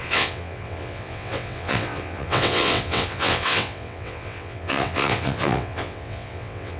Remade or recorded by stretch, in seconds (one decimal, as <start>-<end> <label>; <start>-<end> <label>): 0.0-6.8 remade